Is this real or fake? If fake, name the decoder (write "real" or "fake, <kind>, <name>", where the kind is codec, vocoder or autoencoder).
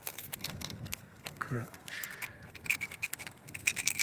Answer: fake, codec, SNAC